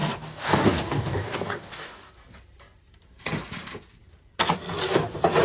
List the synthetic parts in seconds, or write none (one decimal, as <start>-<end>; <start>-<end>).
0.0-2.1

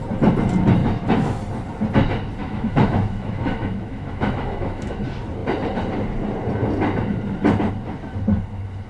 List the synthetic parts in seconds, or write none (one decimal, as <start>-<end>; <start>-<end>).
0.8-1.4; 2.4-5.0

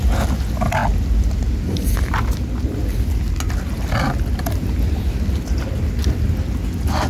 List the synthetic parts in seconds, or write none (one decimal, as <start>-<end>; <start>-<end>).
none